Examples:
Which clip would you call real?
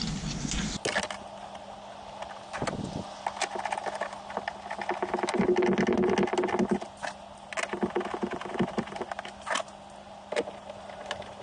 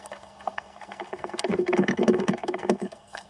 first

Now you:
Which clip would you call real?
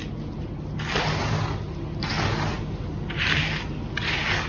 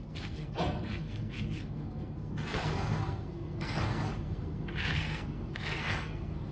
first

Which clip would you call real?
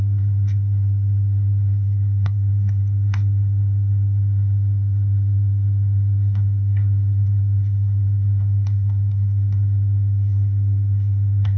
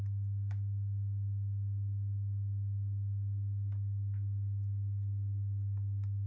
second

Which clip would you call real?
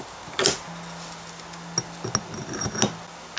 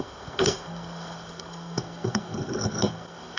first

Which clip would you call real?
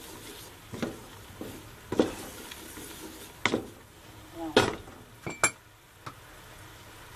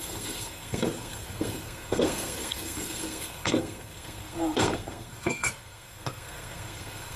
first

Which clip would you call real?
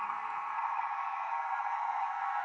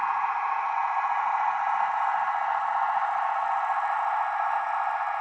second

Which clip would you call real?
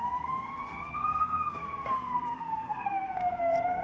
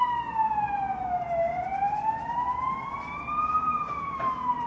second